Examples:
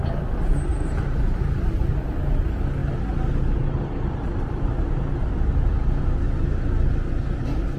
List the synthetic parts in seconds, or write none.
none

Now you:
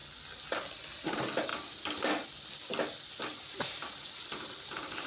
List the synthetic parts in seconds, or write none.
1.1-1.5; 3.5-5.1

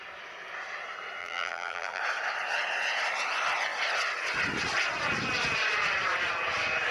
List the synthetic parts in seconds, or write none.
1.2-2.0

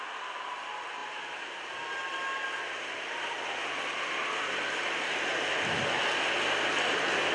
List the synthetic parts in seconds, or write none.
none